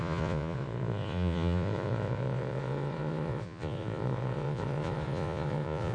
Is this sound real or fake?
fake